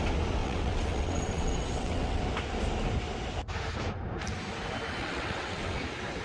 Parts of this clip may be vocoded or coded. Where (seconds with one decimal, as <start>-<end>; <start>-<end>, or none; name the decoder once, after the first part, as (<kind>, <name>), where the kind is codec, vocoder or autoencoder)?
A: 0.4-2.2 (vocoder, WaveNeXt); 5.0-5.8